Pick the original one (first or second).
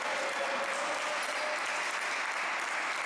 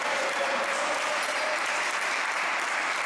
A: first